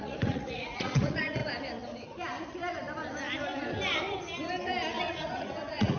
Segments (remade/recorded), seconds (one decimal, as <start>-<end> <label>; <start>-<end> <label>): 0.0-1.4 remade; 1.4-5.0 recorded; 5.0-6.0 remade